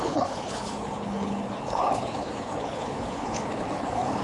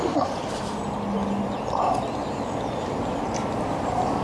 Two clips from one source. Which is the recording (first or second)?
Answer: second